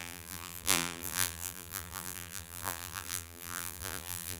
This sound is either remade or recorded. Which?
remade